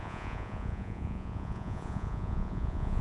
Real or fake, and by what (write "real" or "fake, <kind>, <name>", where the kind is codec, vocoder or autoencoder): fake, vocoder, Vocos